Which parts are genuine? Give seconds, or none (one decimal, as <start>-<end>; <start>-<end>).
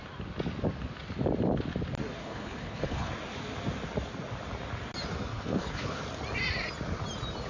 0.0-2.2; 3.1-5.3; 6.0-7.5